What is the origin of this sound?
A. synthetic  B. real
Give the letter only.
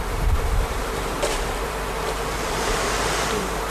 A